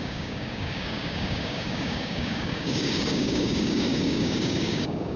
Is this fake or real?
fake